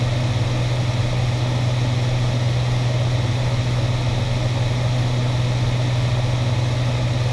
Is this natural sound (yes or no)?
yes